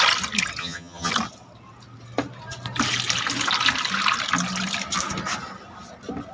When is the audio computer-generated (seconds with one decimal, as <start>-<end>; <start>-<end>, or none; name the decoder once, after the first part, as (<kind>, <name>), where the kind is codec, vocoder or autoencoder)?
0.6-1.1 (vocoder, HiFi-GAN)